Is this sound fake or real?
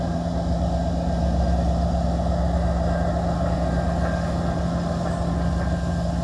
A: real